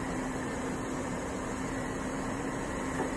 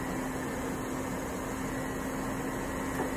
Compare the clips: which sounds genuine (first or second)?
second